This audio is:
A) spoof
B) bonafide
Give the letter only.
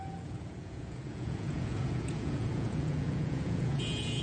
A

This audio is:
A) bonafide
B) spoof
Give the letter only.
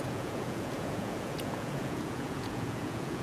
B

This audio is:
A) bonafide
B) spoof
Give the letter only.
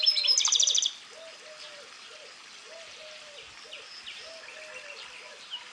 A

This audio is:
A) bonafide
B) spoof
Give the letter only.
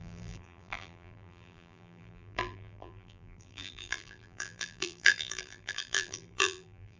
B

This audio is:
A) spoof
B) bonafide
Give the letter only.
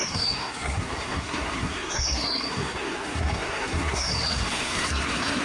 A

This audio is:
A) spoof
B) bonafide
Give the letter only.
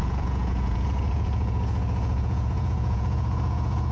A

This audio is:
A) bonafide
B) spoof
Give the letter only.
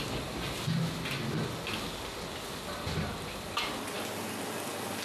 A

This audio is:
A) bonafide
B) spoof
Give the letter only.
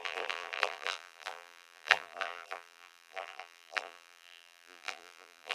B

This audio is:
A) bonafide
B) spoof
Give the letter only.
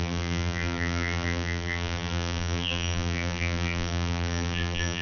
B